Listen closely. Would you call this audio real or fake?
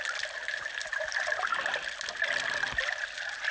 real